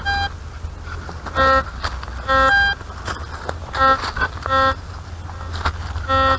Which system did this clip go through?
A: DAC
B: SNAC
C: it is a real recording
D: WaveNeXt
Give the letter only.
C